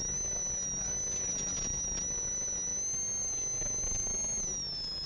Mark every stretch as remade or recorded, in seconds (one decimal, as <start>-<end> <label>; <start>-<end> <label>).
0.0-5.1 recorded